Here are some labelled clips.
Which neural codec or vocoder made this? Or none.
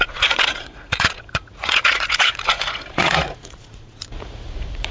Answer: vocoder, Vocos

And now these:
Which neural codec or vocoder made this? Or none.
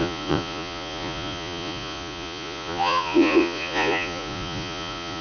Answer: vocoder, Vocos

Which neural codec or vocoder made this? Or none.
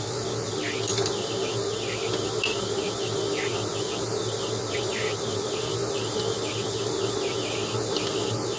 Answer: none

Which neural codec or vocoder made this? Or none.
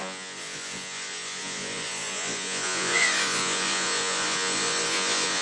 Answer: vocoder, Vocos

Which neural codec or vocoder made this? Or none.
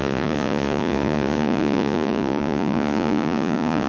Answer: vocoder, Vocos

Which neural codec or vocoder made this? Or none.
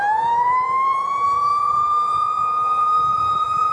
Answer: vocoder, Vocos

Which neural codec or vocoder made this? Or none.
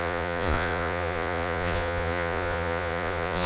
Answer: vocoder, Vocos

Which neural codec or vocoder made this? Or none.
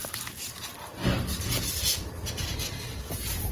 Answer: none